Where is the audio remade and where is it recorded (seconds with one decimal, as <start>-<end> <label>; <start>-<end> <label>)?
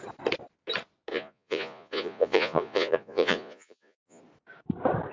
0.0-1.1 recorded; 1.1-4.2 remade; 4.2-5.1 recorded